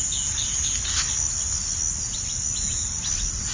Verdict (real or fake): real